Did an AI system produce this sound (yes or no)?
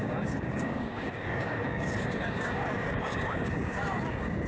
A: yes